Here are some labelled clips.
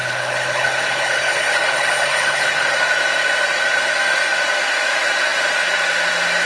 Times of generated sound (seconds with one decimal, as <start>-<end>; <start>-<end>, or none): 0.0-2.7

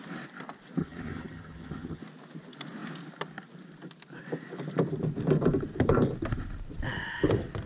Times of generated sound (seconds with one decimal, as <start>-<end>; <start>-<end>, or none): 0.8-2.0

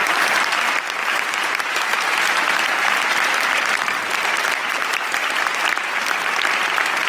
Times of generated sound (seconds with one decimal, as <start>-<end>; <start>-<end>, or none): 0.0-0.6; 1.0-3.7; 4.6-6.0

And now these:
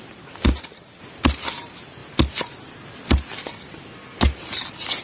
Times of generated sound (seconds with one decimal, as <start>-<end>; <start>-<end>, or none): none